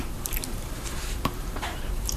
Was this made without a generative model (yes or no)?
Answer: no